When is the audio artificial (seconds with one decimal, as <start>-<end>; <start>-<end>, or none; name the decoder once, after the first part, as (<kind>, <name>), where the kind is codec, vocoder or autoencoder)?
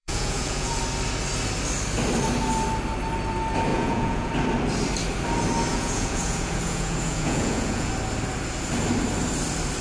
0.0-0.8 (vocoder, Vocos); 3.7-4.3; 5.7-7.9